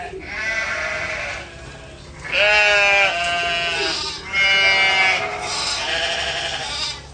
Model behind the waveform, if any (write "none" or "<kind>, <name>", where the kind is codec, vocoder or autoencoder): none